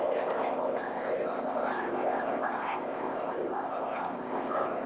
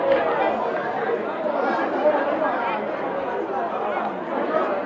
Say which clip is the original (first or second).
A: second